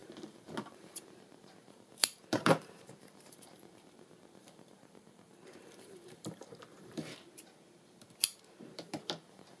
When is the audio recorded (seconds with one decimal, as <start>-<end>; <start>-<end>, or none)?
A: none